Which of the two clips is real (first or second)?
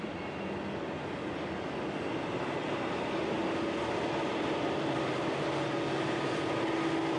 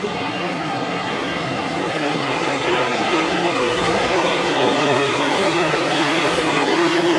first